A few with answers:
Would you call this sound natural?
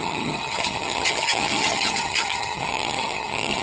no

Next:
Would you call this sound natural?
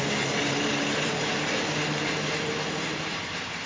yes